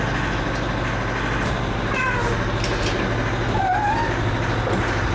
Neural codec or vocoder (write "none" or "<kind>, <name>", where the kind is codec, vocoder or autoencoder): none